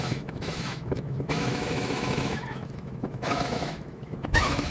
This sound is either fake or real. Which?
fake